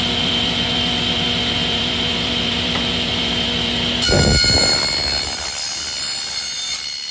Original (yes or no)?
no